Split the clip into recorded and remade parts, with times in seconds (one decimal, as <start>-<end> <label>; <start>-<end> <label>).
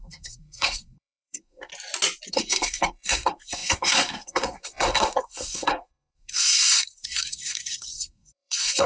0.0-1.7 remade; 1.7-2.3 recorded; 2.3-8.9 remade